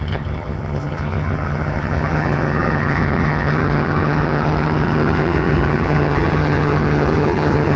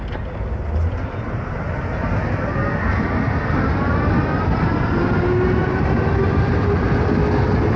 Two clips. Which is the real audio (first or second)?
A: second